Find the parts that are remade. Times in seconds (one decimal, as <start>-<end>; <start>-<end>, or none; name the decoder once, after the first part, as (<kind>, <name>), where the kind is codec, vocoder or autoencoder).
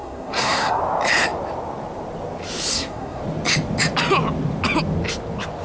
0.0-0.8 (codec, SNAC); 2.7-3.2